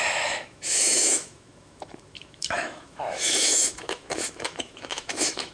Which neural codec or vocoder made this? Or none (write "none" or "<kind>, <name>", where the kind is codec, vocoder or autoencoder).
autoencoder, DAC-VAE